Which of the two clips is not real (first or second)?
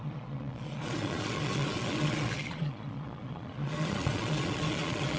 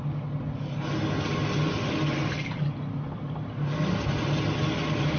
first